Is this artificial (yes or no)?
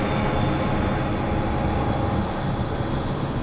no